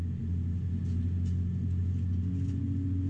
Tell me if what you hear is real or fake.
real